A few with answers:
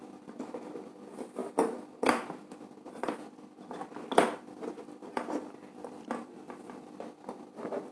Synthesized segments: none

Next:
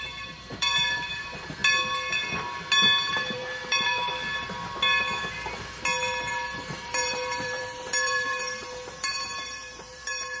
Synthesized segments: 0.0-1.6 (vocoder, BigVGAN v2); 3.1-4.1; 6.3-10.4

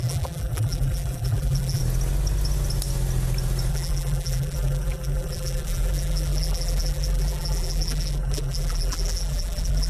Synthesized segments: 0.0-1.8 (vocoder, BigVGAN v2); 3.7-9.9